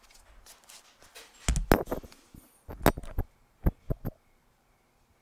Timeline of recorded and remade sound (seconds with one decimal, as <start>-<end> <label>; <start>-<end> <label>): 0.0-3.0 recorded; 3.0-4.7 remade; 4.7-5.2 recorded